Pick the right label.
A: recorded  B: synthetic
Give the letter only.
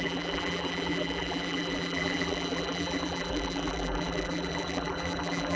B